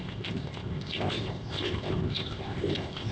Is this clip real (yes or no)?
no